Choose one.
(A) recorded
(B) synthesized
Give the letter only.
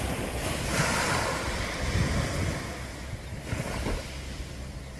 A